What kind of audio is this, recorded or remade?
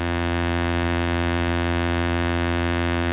remade